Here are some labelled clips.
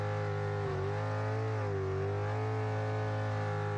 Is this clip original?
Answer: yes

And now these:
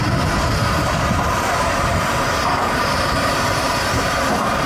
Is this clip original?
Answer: no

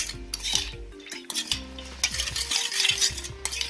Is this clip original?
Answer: yes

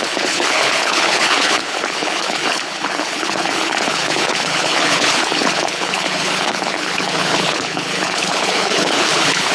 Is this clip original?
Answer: no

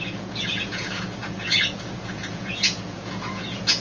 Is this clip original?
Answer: no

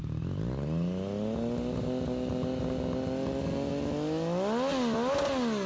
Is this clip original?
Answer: yes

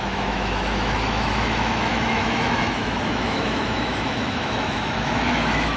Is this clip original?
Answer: no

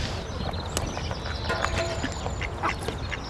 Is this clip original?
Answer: yes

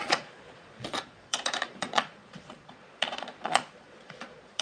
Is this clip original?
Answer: no